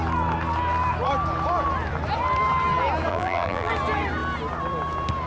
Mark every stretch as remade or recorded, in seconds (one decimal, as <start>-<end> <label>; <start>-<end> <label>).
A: 0.0-3.1 recorded; 3.1-3.7 remade; 3.7-5.3 recorded